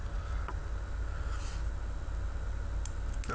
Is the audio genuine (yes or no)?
yes